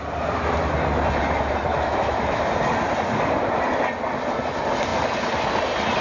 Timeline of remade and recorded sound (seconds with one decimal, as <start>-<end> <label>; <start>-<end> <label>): 0.0-1.7 recorded; 1.7-2.4 remade; 2.4-6.0 recorded